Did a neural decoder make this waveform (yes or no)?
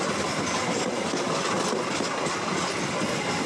no